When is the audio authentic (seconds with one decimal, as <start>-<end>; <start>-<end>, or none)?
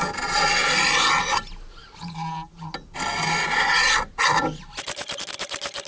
0.0-5.9